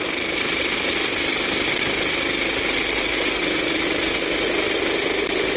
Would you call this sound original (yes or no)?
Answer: no